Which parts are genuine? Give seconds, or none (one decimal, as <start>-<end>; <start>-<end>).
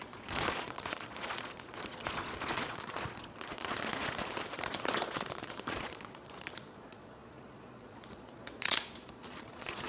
none